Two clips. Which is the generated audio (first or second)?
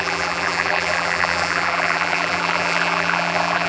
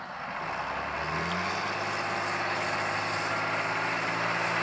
first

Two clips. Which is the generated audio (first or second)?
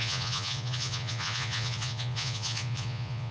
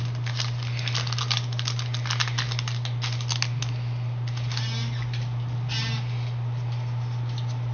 first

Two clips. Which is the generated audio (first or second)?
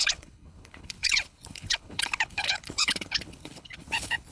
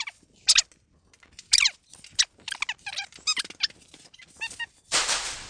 first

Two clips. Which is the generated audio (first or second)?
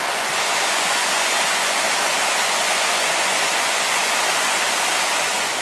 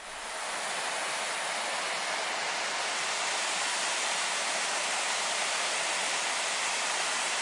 first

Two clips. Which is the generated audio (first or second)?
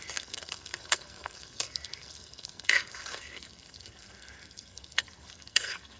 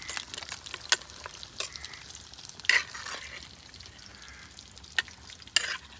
first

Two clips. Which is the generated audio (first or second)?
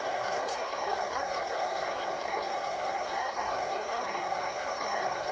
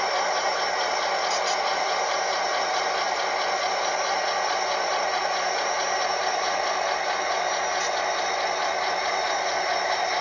first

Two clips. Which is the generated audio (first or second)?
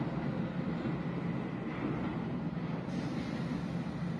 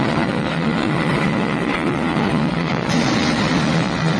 second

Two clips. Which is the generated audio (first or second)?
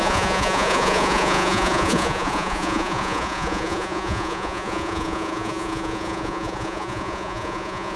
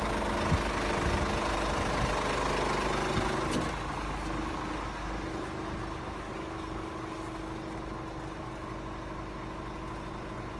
first